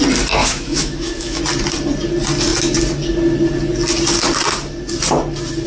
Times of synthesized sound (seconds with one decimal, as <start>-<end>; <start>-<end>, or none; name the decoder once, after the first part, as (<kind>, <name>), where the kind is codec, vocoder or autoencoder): 0.4-1.4 (autoencoder, DAC-VAE)